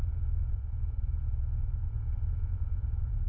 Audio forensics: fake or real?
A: fake